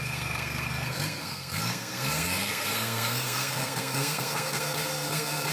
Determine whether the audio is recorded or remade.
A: remade